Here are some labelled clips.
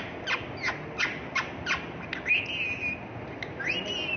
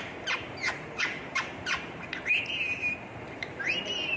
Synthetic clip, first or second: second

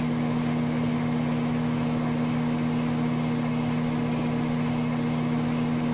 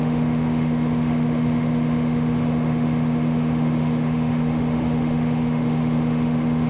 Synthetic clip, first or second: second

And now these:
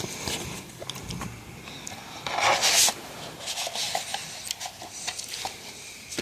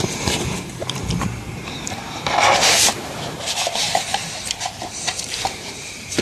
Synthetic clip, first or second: second